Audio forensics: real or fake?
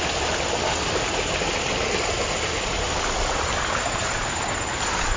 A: real